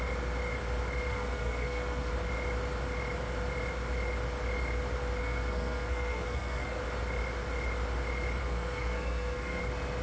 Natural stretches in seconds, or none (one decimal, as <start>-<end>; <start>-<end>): 0.0-1.1; 2.1-5.2; 6.8-8.4; 9.6-10.0